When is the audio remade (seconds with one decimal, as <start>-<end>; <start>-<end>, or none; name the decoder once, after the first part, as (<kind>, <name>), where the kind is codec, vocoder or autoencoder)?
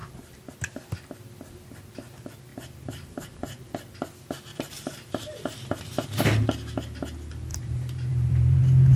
0.0-0.5 (vocoder, BigVGAN v2); 2.5-3.4; 4.5-6.2; 7.5-8.6